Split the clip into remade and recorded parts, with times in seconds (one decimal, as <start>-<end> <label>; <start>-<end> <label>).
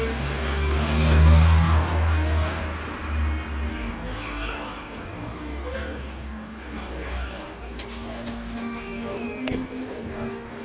0.0-2.6 remade; 2.6-3.7 recorded; 3.7-10.6 remade